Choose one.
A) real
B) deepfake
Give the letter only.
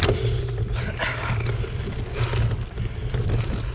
A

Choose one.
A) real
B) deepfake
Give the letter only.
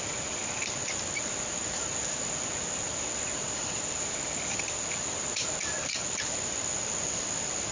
A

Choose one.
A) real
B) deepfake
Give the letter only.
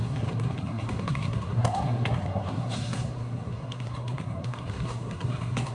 B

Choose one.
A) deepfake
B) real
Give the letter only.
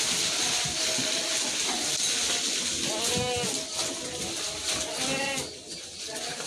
B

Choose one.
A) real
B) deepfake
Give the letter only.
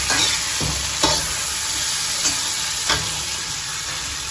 A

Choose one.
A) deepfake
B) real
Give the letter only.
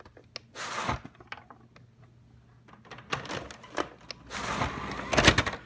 B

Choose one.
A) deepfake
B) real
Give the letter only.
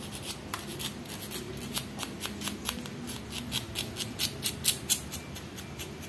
B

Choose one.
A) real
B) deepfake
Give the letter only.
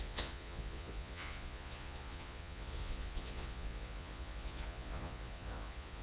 B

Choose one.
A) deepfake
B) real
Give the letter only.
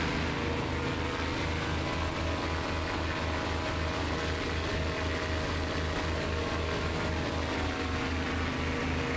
B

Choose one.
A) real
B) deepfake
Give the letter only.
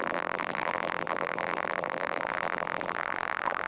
B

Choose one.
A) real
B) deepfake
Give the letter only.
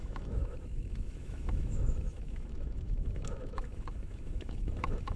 B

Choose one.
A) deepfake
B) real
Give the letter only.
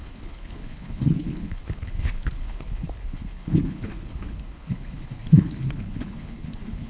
A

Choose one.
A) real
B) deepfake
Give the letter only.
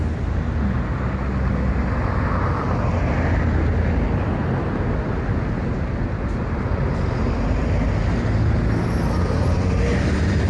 A